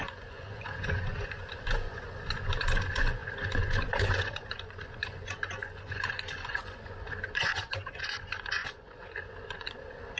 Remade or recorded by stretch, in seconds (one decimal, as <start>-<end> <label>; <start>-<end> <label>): 0.0-10.2 remade

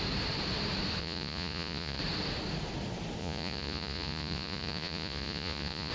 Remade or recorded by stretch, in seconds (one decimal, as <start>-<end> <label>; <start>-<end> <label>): 0.0-1.0 recorded; 1.0-2.0 remade; 2.0-3.2 recorded; 3.2-5.9 remade

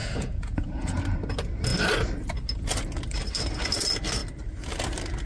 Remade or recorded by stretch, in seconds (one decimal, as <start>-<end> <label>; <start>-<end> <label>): 0.0-1.0 remade; 1.0-5.3 recorded

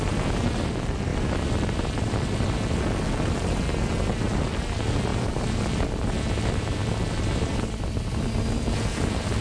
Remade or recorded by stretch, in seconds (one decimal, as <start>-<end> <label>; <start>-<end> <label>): 0.0-9.4 recorded

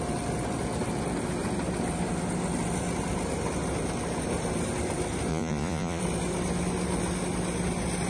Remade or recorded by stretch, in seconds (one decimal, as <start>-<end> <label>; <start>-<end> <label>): 0.0-5.3 recorded; 5.3-6.0 remade; 6.0-8.1 recorded

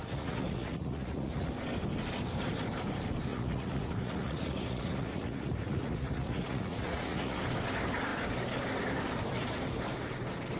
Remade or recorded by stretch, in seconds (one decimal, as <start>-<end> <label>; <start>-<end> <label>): 0.0-1.5 remade; 1.5-3.3 recorded; 3.3-7.4 remade; 7.4-10.6 recorded